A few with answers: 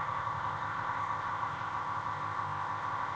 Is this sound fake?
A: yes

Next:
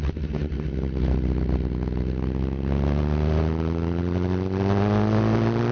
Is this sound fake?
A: no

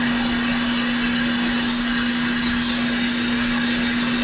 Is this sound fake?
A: no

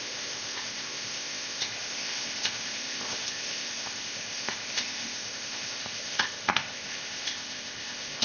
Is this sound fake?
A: yes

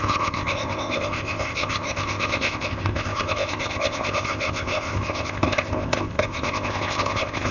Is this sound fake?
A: yes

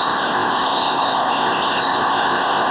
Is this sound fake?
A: yes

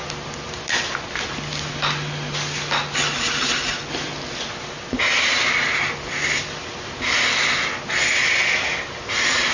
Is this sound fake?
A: no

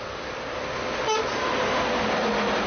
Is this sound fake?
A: no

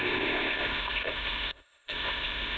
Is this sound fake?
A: yes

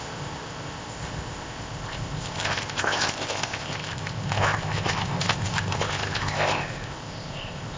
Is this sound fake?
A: yes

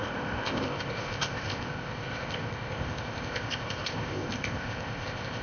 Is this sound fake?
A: yes